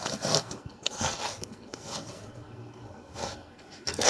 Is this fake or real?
fake